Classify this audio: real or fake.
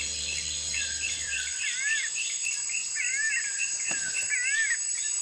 fake